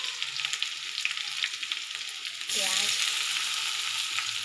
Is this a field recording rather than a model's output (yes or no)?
yes